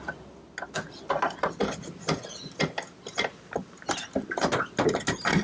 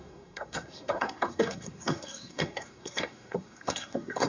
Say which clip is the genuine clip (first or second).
first